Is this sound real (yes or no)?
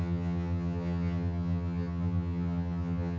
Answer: no